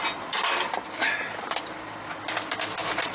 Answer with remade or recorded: recorded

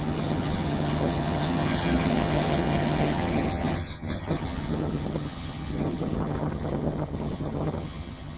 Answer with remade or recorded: remade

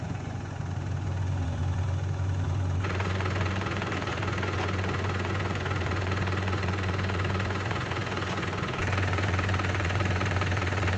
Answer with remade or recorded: remade